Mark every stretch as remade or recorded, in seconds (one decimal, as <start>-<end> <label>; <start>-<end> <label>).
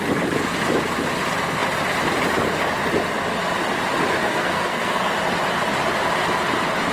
0.0-4.2 recorded; 4.2-5.1 remade; 5.1-6.9 recorded